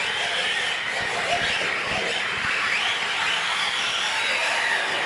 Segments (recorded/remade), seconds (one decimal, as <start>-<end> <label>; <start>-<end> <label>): 0.0-2.0 recorded; 2.0-2.8 remade; 2.8-5.1 recorded